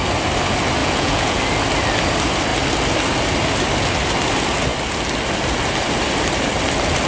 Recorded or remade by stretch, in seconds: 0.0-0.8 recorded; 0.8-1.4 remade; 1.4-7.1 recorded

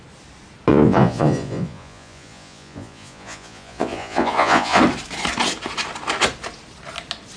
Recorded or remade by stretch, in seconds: 0.0-0.7 recorded; 0.7-4.8 remade; 4.8-7.4 recorded

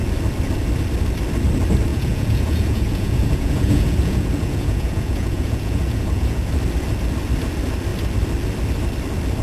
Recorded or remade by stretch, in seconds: 0.0-1.9 recorded; 1.9-6.5 remade; 6.5-9.4 recorded

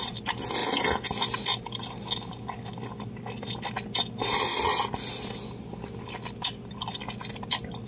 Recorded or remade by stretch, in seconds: 0.0-7.9 recorded

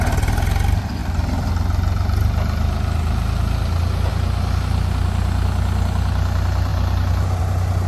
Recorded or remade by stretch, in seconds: 0.0-7.9 recorded

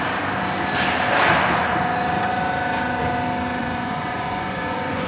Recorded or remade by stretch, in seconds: 0.0-3.6 recorded; 3.6-5.1 remade